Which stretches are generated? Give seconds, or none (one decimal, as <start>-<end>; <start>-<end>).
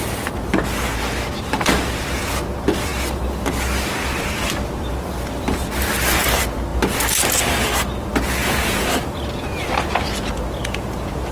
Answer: 8.4-8.9; 10.6-11.3